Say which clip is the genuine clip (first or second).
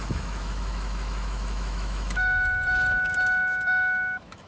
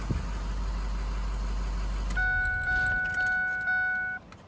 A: second